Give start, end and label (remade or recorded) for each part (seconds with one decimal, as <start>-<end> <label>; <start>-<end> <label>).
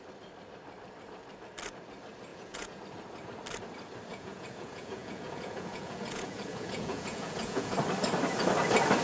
0.0-2.3 recorded; 2.3-2.8 remade; 2.8-4.1 recorded; 4.1-7.7 remade; 7.7-9.0 recorded